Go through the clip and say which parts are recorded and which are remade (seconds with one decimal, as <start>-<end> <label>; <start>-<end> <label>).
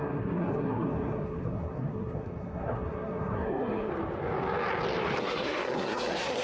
0.0-3.9 remade; 3.9-5.2 recorded; 5.2-6.4 remade